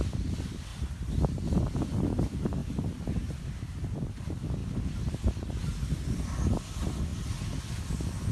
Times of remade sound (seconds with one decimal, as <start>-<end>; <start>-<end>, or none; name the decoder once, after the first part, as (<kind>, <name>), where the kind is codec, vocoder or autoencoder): 0.7-2.2 (vocoder, BigVGAN v2); 2.6-3.4